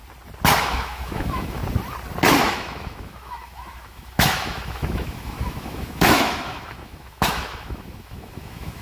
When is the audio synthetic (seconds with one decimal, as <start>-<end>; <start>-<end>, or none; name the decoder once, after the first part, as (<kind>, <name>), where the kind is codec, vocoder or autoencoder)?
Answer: 0.6-1.6 (autoencoder, DAC-VAE); 2.4-8.8